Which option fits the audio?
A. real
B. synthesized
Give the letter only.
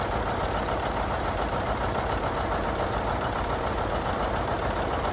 A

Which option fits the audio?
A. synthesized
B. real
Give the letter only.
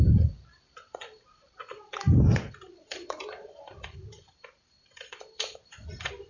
A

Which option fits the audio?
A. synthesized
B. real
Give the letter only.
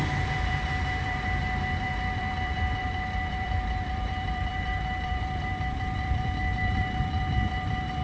A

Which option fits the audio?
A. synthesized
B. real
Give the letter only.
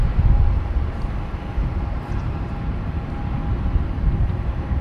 A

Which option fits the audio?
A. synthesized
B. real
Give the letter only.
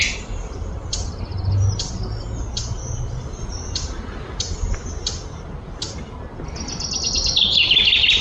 B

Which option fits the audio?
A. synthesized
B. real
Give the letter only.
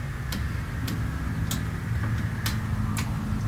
B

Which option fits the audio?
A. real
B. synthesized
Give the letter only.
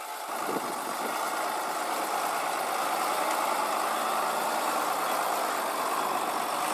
A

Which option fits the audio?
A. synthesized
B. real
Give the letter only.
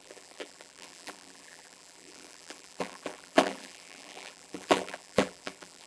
A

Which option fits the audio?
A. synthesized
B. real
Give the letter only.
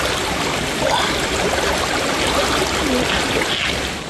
B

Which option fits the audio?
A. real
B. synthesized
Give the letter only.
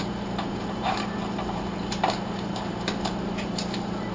B